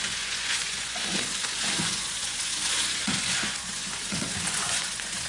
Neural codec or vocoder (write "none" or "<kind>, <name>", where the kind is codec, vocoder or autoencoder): vocoder, Vocos